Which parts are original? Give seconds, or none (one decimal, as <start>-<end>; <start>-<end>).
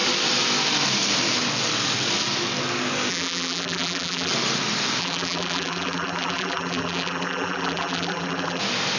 0.0-3.1; 4.3-5.0; 8.6-9.0